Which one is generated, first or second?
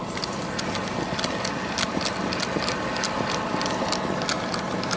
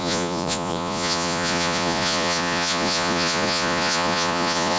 second